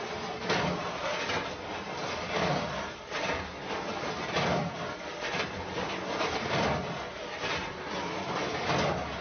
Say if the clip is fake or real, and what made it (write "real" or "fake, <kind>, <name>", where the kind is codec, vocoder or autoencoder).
real